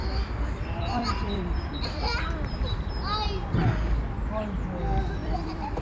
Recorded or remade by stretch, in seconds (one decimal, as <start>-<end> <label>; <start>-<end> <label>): 0.0-2.8 remade; 2.8-5.2 recorded; 5.2-5.8 remade